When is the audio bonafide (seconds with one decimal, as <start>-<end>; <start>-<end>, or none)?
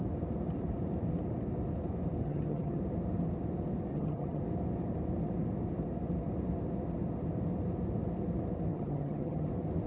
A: 0.0-2.2; 2.8-3.9; 4.4-8.7; 9.5-9.9